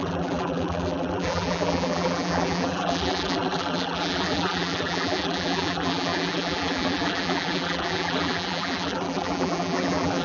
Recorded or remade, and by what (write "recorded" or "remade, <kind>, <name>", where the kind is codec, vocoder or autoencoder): remade, vocoder, BigVGAN v2